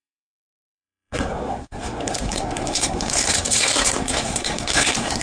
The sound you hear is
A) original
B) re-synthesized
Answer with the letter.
B